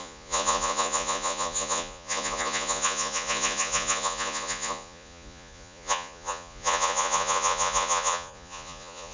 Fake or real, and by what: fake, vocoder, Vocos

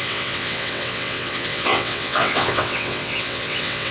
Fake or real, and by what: fake, vocoder, WaveNeXt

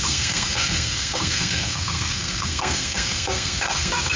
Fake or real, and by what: fake, codec, SNAC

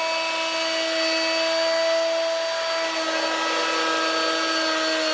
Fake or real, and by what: real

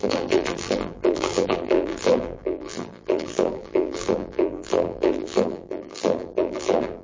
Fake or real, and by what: fake, vocoder, BigVGAN v2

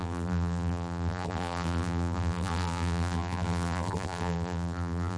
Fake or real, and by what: fake, vocoder, BigVGAN v2